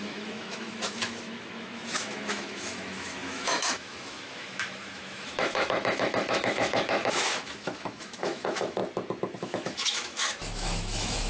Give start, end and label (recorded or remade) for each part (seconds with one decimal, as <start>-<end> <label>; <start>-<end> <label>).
0.0-8.8 remade; 8.8-9.4 recorded; 9.4-11.3 remade